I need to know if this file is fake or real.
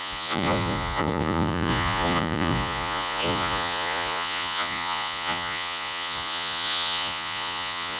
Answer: fake